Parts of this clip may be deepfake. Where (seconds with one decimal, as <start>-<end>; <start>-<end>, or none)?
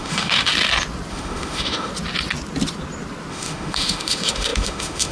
0.0-0.5; 1.1-1.9; 3.3-5.1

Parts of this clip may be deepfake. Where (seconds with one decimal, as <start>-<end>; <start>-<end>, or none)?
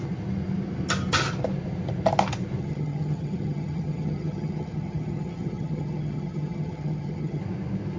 2.6-7.4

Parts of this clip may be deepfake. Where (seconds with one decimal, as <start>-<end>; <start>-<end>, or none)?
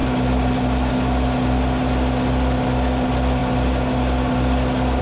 none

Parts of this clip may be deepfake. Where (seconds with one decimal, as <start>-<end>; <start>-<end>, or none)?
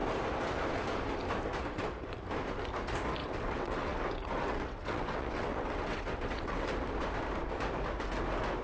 3.2-6.7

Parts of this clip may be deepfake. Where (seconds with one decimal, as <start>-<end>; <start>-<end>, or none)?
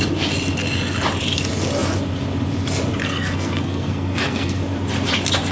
3.0-4.6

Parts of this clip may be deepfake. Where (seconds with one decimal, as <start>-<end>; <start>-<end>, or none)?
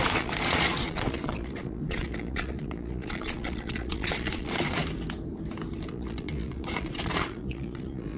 0.0-4.8; 5.9-8.2